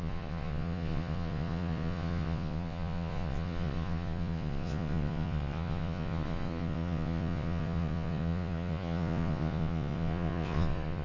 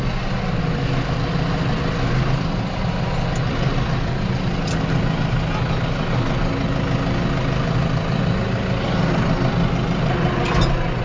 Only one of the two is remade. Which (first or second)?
first